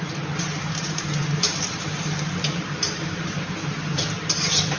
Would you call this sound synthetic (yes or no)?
yes